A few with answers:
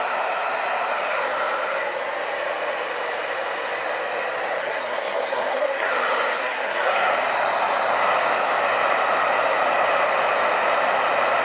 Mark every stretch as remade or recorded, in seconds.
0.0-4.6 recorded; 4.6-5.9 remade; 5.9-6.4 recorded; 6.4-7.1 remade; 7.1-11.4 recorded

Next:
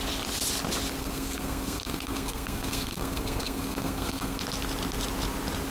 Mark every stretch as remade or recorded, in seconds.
0.0-1.0 recorded; 1.0-4.4 remade; 4.4-5.7 recorded

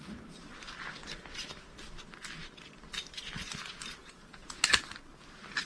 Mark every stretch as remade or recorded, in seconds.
0.0-4.0 recorded; 4.0-4.6 remade; 4.6-5.7 recorded

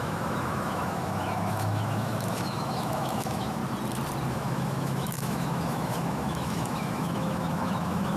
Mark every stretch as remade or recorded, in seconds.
0.0-3.6 remade; 3.6-4.3 recorded; 4.3-8.2 remade

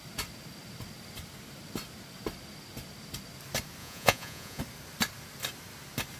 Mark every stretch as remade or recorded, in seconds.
0.0-3.8 recorded; 3.8-4.6 remade; 4.6-6.2 recorded

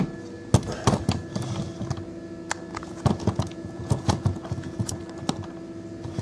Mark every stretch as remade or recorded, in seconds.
0.0-2.7 recorded; 2.7-5.0 remade; 5.0-6.2 recorded